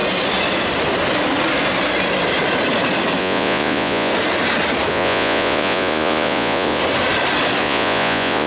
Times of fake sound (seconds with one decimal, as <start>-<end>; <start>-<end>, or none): 3.2-4.1; 4.9-6.8; 7.6-8.5

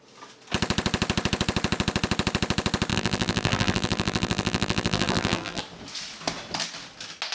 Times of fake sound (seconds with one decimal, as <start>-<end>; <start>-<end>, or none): 2.9-5.6

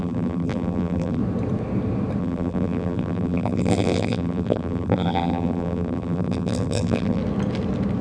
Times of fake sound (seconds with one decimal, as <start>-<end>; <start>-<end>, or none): 0.0-1.2; 2.2-7.2

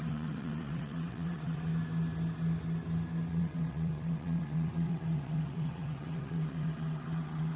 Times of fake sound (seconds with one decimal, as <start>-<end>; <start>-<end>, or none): 0.0-1.7; 3.3-7.6

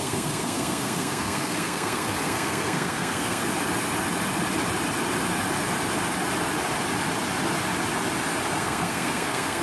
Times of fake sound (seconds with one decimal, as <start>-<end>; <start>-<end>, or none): 0.0-3.4; 8.6-9.6

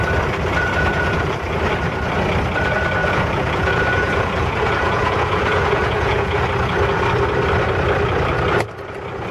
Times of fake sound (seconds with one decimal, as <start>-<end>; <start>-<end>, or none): 0.9-1.7; 3.0-6.4